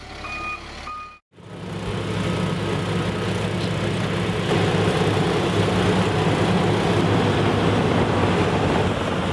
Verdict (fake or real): real